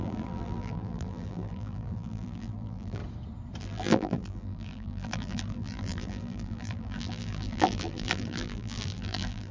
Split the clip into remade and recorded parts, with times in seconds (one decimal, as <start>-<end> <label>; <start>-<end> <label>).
0.0-3.0 remade; 3.0-3.6 recorded; 3.6-9.5 remade